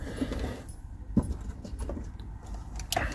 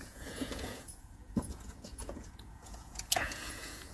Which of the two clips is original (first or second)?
first